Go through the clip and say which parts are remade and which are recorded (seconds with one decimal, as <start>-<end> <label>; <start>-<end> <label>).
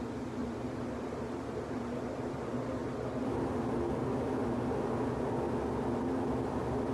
0.0-0.4 recorded; 0.4-1.3 remade; 1.3-6.9 recorded